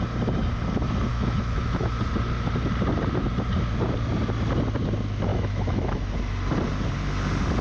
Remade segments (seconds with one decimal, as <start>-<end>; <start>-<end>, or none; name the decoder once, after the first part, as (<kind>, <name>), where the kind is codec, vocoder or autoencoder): 1.1-2.0 (autoencoder, DAC-VAE); 5.3-6.1